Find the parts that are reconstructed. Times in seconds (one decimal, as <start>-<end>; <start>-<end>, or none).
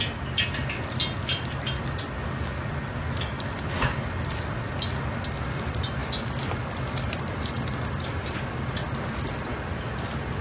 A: none